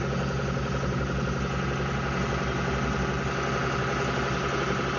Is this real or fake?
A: real